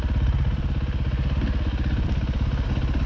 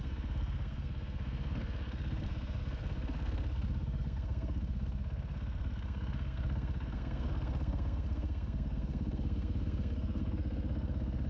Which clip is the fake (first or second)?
second